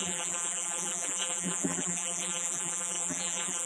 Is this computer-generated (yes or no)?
yes